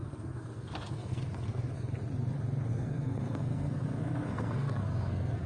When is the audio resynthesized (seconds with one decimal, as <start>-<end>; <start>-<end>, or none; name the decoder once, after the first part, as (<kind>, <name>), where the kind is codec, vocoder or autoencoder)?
0.0-1.9 (codec, SNAC); 2.7-5.5